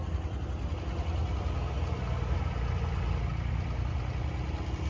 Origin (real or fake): real